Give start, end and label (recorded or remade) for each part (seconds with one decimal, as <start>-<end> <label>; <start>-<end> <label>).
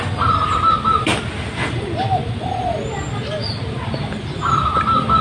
0.0-5.2 recorded